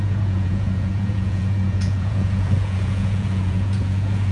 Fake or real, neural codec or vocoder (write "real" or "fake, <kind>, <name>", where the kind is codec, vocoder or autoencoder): fake, vocoder, Vocos